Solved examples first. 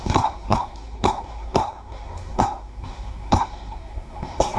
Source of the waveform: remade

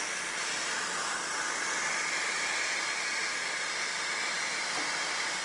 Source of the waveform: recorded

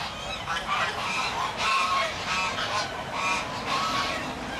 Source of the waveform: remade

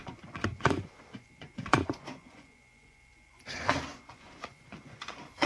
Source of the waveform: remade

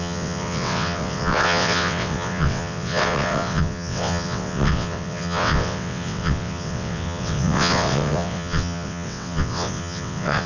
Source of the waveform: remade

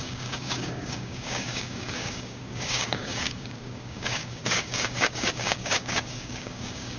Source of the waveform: remade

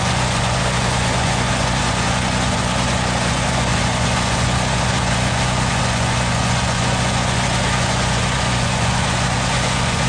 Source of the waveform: remade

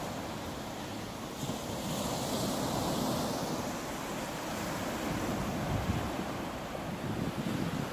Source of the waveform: recorded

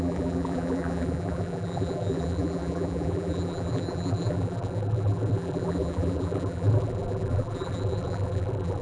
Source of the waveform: remade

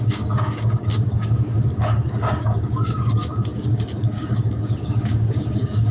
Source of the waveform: remade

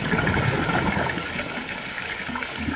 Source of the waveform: remade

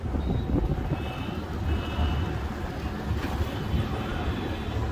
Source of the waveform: recorded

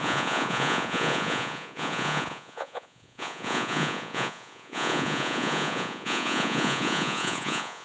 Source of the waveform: remade